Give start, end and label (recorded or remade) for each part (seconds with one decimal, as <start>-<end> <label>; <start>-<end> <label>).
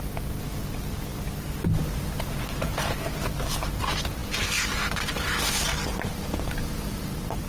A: 0.0-5.7 recorded; 5.7-7.5 remade